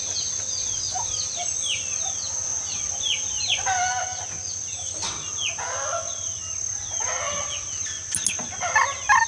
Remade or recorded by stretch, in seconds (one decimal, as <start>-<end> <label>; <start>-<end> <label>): 0.0-9.3 recorded